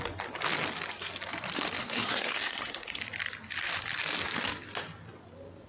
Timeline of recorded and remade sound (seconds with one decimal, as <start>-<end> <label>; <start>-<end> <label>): 0.0-1.8 recorded; 1.8-3.0 remade; 3.0-5.7 recorded